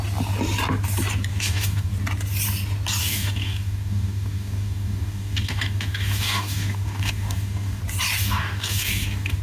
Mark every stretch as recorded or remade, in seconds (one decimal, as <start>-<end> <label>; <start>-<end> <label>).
0.0-1.3 recorded; 1.3-1.9 remade; 1.9-3.0 recorded; 3.0-7.8 remade; 7.8-8.2 recorded; 8.2-9.4 remade